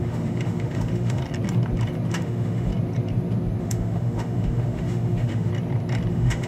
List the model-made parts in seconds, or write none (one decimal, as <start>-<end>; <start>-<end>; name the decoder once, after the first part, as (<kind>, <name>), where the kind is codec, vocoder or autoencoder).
0.0-1.2 (autoencoder, DAC-VAE); 2.1-2.7; 3.6-5.5; 6.1-6.5